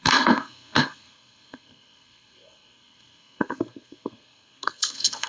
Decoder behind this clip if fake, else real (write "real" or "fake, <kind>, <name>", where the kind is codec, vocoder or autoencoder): fake, codec, SNAC